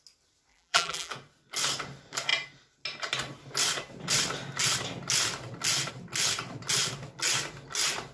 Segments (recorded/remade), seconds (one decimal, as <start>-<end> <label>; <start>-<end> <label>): 0.0-0.5 recorded; 0.5-1.1 remade; 1.1-8.1 recorded